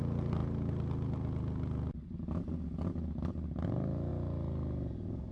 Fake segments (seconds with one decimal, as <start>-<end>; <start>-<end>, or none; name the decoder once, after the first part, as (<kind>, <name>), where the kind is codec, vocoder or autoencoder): none